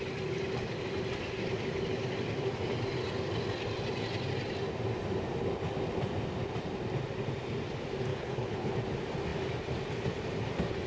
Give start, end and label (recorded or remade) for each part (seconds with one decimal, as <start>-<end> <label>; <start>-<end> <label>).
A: 0.0-8.1 recorded; 8.1-8.7 remade; 8.7-10.9 recorded